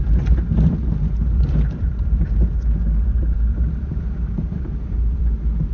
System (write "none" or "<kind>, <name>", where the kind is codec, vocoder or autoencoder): vocoder, BigVGAN v2